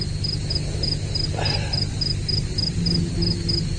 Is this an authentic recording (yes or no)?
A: yes